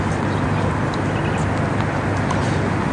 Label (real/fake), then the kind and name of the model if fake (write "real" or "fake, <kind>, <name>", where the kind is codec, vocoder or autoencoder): real